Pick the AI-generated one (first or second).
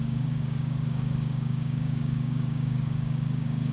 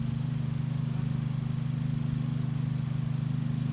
first